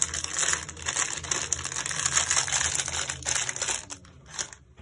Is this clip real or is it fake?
real